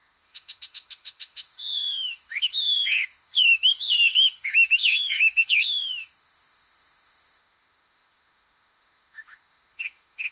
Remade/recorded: remade